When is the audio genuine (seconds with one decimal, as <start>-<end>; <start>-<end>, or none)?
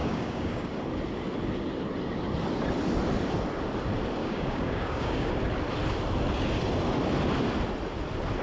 0.7-4.2; 5.3-8.4